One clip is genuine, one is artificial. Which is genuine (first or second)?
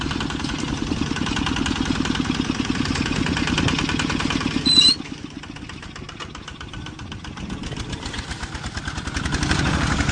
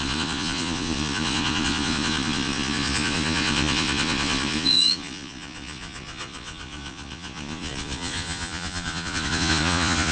first